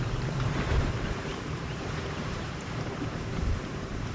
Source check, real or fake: fake